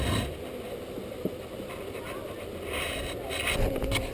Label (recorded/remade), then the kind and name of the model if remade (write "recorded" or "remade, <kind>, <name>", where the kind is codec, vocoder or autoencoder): recorded